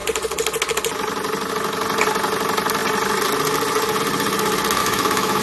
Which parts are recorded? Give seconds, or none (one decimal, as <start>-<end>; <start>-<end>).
0.0-4.8